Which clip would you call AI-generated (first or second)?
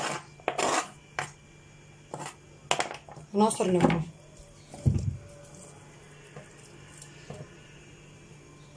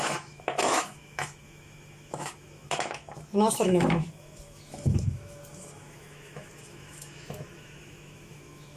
second